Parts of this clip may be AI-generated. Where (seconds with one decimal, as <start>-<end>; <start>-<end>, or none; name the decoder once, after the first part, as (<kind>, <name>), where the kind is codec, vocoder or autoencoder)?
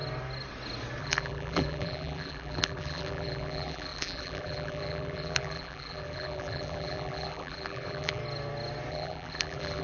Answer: 1.0-8.2 (vocoder, BigVGAN v2); 8.9-9.8